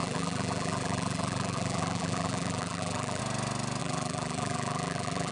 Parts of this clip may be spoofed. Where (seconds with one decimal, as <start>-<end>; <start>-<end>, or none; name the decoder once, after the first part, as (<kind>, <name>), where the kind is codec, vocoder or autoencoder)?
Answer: 0.0-3.2 (vocoder, BigVGAN v2); 3.8-5.3

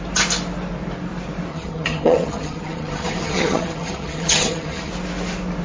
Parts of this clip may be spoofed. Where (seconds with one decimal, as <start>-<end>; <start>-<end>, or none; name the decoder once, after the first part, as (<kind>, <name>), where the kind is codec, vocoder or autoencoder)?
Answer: 1.5-4.9 (vocoder, HiFi-GAN)